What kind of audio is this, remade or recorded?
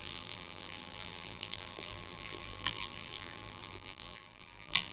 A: remade